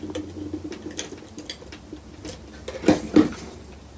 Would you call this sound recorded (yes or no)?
yes